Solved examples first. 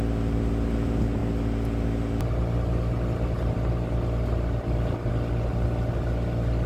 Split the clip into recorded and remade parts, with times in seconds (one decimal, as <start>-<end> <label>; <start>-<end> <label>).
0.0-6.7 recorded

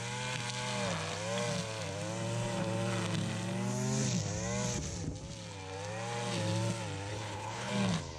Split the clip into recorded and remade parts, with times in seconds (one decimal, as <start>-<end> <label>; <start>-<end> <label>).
0.0-7.1 recorded; 7.1-7.7 remade; 7.7-8.2 recorded

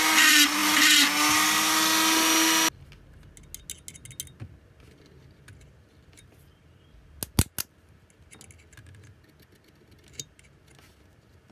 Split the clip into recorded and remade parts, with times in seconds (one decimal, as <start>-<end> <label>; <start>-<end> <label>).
0.0-11.5 recorded

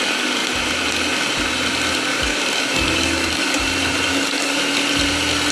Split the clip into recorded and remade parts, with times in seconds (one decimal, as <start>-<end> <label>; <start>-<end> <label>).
0.0-2.1 recorded; 2.1-3.6 remade; 3.6-4.1 recorded; 4.1-4.6 remade; 4.6-5.5 recorded